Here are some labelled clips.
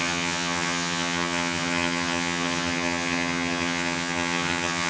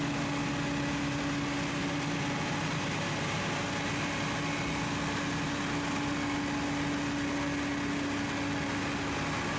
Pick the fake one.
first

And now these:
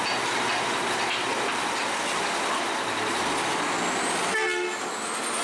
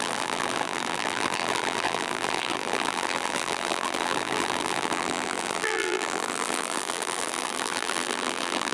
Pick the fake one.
second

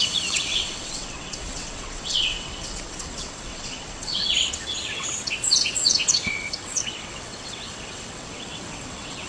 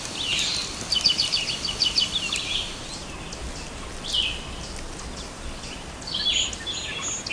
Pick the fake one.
first